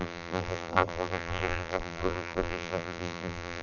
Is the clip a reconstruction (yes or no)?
yes